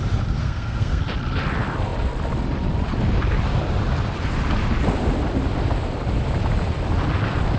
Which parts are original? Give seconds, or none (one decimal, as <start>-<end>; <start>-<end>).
0.0-0.4; 1.0-7.6